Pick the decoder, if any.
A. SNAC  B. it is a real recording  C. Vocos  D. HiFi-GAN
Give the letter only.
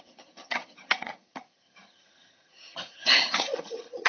D